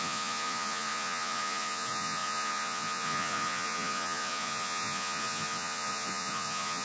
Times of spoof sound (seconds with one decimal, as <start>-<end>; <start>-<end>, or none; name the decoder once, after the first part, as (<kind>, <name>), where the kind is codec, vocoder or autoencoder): 0.0-6.8 (vocoder, Vocos)